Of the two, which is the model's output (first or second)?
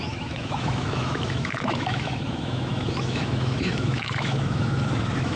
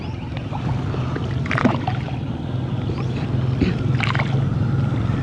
first